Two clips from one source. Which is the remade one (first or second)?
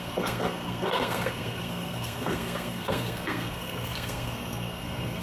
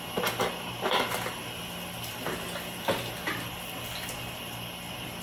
first